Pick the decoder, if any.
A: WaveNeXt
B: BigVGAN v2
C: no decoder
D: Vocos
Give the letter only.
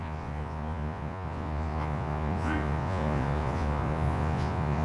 D